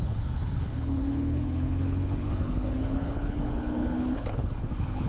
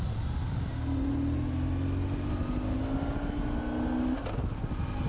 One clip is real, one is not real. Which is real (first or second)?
second